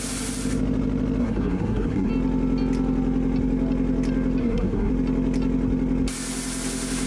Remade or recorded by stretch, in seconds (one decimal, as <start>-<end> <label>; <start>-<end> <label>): 0.0-1.2 recorded; 1.2-2.1 remade; 2.1-4.4 recorded; 4.4-4.9 remade; 4.9-7.1 recorded

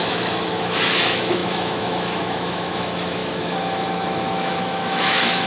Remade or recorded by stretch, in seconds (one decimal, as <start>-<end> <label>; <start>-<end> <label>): 0.0-5.5 remade

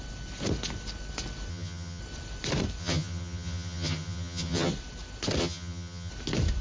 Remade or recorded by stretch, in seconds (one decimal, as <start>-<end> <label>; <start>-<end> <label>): 0.0-1.5 recorded; 1.5-2.0 remade; 2.0-2.8 recorded; 2.8-4.7 remade; 4.7-5.4 recorded; 5.4-6.1 remade; 6.1-6.6 recorded

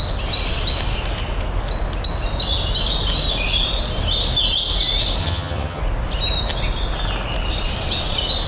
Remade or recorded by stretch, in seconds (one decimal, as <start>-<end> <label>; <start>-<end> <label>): 0.0-5.2 recorded; 5.2-5.8 remade; 5.8-8.5 recorded

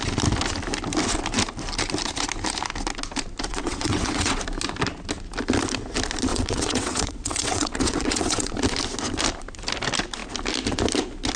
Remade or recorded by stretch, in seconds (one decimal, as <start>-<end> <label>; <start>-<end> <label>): 0.0-3.5 recorded; 3.5-4.4 remade; 4.4-6.3 recorded; 6.3-8.5 remade; 8.5-11.4 recorded

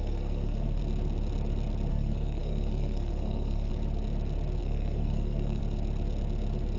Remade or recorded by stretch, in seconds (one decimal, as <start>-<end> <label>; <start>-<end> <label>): 0.0-0.8 remade; 0.8-1.9 recorded; 1.9-3.7 remade; 3.7-4.6 recorded; 4.6-5.6 remade; 5.6-6.8 recorded

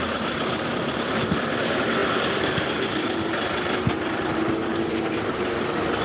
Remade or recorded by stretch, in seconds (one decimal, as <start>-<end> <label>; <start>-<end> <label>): 0.0-6.0 remade